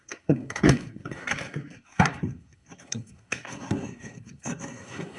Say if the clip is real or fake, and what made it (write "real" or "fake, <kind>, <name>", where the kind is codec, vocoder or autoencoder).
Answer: fake, codec, SNAC